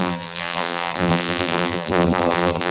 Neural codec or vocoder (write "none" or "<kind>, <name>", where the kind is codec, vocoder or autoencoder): vocoder, BigVGAN v2